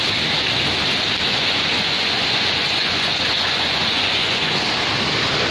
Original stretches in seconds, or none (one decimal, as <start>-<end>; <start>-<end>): 0.0-1.3; 4.6-5.5